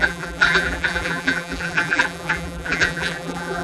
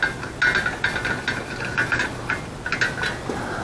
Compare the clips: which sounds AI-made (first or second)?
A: first